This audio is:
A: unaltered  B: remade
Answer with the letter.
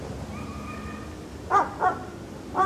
A